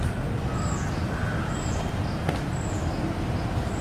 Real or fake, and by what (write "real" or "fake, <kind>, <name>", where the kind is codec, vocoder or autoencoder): real